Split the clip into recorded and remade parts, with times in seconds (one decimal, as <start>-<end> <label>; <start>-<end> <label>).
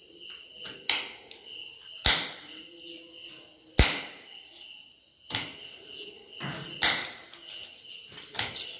0.0-8.8 recorded